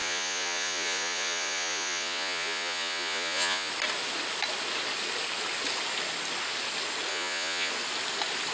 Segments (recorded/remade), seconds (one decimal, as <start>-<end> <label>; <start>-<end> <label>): 0.0-3.7 remade; 3.7-7.1 recorded; 7.1-7.7 remade; 7.7-8.5 recorded

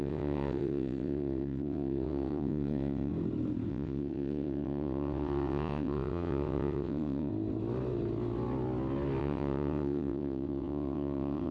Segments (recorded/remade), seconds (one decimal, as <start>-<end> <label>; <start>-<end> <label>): 0.0-3.1 remade; 3.1-3.7 recorded; 3.7-7.3 remade; 7.3-9.2 recorded; 9.2-11.5 remade

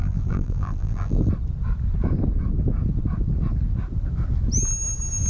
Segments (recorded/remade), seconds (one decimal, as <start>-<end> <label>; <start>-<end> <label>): 0.0-1.3 remade; 1.3-5.3 recorded

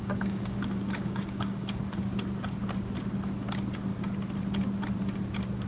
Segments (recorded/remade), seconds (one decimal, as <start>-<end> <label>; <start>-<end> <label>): 0.0-1.8 remade; 1.8-5.7 recorded

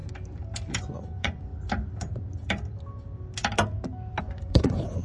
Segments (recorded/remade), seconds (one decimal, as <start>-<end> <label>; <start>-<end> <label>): 0.0-0.8 recorded; 0.8-1.5 remade; 1.5-4.2 recorded; 4.2-5.0 remade

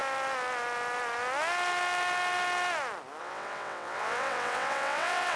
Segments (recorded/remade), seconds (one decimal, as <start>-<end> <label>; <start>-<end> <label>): 0.0-3.2 recorded; 3.2-5.4 remade

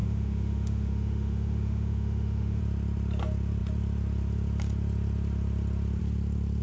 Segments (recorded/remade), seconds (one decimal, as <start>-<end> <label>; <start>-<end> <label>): 0.0-2.6 remade; 2.6-6.6 recorded